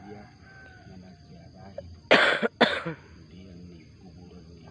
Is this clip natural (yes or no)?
yes